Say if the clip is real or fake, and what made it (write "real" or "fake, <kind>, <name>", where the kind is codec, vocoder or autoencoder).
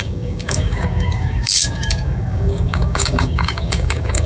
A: fake, codec, DAC